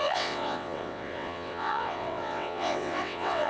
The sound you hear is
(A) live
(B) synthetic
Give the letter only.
B